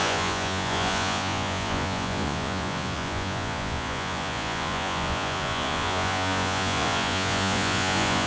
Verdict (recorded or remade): remade